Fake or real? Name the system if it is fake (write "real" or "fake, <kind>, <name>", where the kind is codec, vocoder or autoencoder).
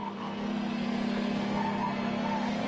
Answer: fake, codec, SNAC